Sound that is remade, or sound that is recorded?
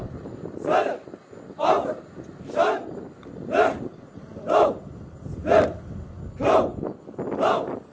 recorded